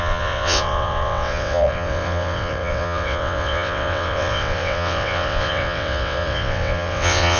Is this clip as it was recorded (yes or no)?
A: no